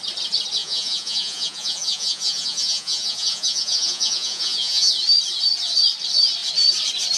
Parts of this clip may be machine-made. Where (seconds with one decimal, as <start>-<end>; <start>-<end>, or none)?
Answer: 0.6-4.9

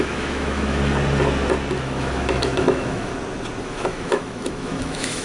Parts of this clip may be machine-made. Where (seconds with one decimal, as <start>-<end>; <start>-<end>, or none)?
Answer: 0.0-0.8; 1.8-3.1; 3.6-5.2

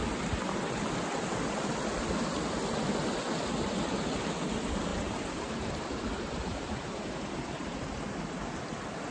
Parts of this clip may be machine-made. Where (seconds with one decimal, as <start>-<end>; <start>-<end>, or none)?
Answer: 4.9-8.5

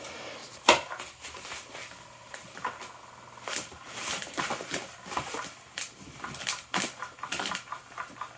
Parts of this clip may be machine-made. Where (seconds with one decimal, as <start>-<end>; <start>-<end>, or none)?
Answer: 0.0-0.4; 1.4-2.2; 3.0-8.4

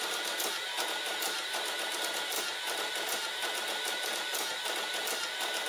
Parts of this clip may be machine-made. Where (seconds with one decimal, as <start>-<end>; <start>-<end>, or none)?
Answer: none

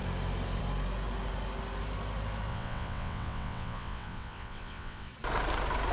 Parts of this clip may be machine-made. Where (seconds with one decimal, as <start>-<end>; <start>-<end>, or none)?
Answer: 2.5-5.1